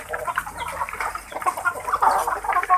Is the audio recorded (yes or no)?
no